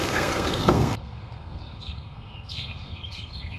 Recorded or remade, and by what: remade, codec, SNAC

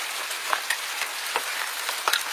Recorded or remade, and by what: recorded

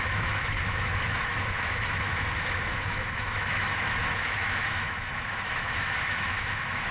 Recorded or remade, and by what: remade, autoencoder, DAC-VAE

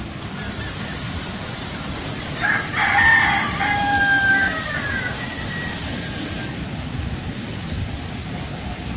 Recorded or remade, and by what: recorded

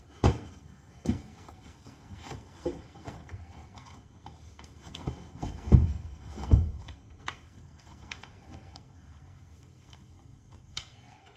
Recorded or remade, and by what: remade, codec, SNAC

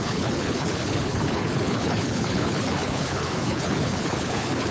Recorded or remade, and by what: remade, codec, HILCodec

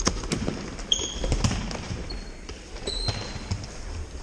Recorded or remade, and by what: remade, vocoder, BigVGAN v2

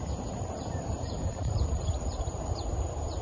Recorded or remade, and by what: remade, vocoder, BigVGAN v2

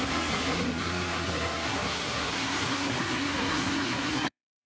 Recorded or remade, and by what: remade, codec, SNAC